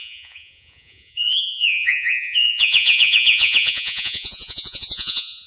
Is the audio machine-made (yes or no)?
yes